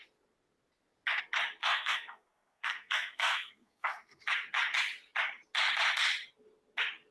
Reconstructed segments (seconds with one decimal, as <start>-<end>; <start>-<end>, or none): 1.6-4.2